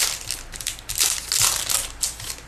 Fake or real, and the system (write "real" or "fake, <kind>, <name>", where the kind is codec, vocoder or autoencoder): real